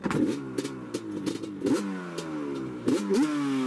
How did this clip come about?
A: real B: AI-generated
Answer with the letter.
A